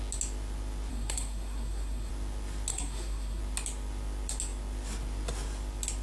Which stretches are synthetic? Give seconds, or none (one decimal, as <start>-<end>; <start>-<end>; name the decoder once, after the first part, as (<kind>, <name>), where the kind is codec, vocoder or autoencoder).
0.9-2.1 (codec, SNAC); 2.7-3.4